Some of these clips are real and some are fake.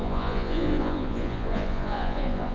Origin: fake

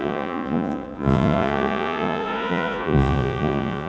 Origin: fake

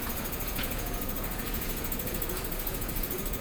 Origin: fake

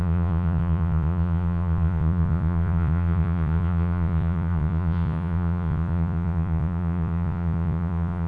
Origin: fake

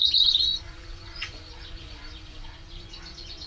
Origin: fake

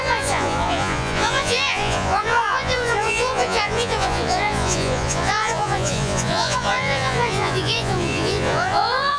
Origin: fake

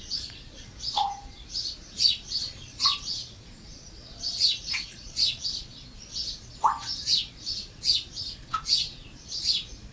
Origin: fake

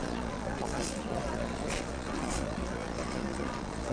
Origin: fake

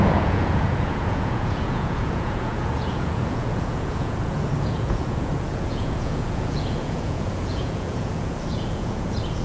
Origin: fake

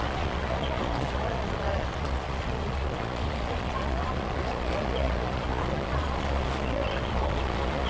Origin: fake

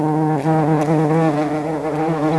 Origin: real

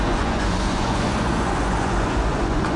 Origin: fake